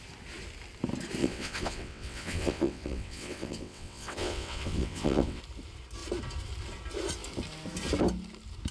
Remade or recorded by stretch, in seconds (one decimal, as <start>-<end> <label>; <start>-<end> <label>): 0.0-1.2 recorded; 1.2-5.4 remade; 5.4-8.7 recorded